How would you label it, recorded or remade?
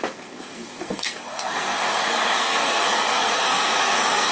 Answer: remade